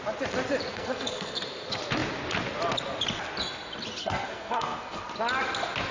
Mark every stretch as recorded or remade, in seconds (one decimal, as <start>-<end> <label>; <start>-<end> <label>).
0.0-0.7 recorded; 0.7-1.4 remade; 1.4-4.0 recorded; 4.0-5.0 remade; 5.0-5.9 recorded